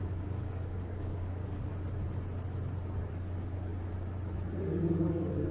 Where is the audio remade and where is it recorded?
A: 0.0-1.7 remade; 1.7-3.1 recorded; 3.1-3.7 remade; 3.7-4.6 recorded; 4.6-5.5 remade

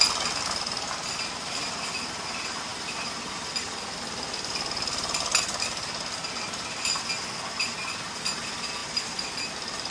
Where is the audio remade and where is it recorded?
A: 0.0-9.9 recorded

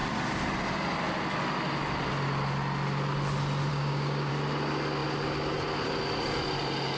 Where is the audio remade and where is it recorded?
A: 0.0-3.7 recorded; 3.7-4.3 remade; 4.3-7.0 recorded